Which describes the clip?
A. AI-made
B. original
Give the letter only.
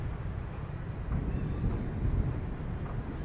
B